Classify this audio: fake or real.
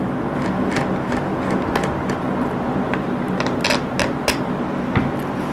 real